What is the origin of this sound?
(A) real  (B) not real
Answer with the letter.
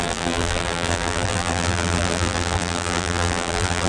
B